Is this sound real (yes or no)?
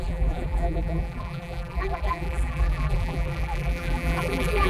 no